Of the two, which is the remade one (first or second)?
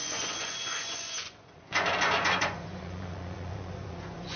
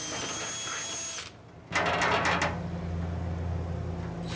first